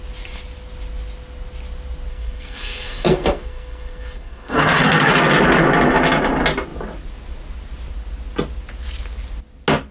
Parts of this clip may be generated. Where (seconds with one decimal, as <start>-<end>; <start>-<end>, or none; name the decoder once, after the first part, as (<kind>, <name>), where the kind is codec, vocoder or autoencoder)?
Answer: 2.1-5.1 (codec, SNAC)